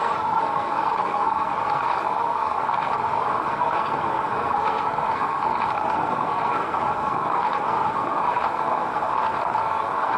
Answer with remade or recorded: remade